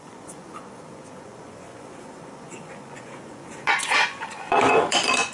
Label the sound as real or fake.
fake